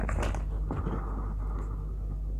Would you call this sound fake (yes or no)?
no